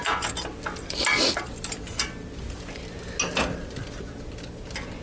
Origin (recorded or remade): recorded